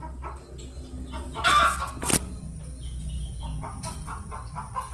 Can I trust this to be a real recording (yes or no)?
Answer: yes